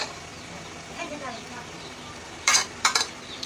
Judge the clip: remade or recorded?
remade